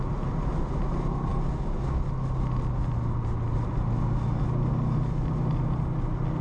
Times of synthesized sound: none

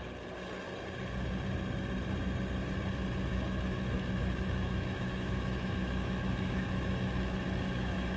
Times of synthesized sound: 3.3-8.2 (autoencoder, DAC-VAE)

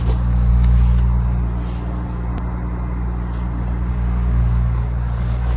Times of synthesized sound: 0.0-0.5 (codec, DAC); 3.9-5.6

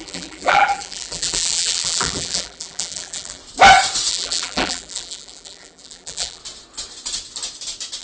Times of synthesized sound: 0.0-3.4 (vocoder, BigVGAN v2); 4.1-6.4

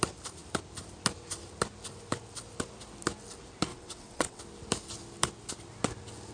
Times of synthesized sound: 3.7-4.4 (vocoder, WaveNeXt)

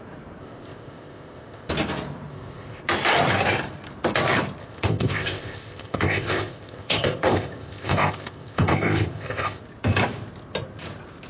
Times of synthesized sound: 0.4-1.7 (codec, ZipCodec); 2.3-2.8; 4.6-9.6

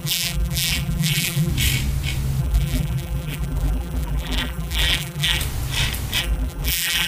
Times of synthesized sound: 0.0-1.5 (vocoder, BigVGAN v2); 2.4-5.4; 6.2-7.1

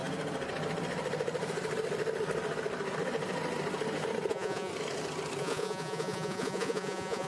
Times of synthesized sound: 4.3-4.7 (vocoder, Vocos); 5.4-7.3